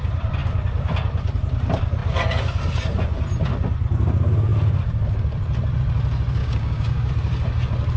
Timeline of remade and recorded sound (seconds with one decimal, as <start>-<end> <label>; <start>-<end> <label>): 0.0-6.4 recorded; 6.4-7.1 remade; 7.1-8.0 recorded